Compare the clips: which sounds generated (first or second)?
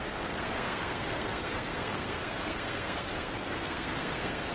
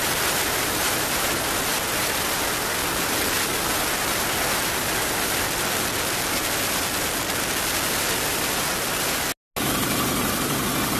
first